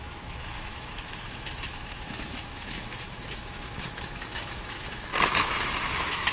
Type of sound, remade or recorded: remade